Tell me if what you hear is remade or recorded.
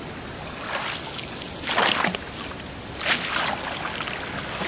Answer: recorded